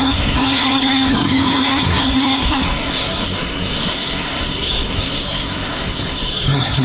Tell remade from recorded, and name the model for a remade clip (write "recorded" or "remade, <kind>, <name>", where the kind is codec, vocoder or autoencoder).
remade, codec, SNAC